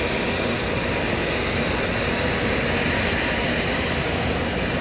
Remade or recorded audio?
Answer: recorded